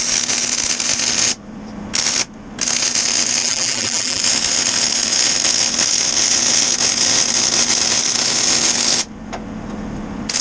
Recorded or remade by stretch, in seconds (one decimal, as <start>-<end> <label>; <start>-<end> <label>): 0.0-3.4 recorded; 3.4-4.2 remade; 4.2-10.4 recorded